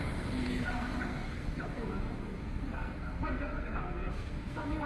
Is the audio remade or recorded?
remade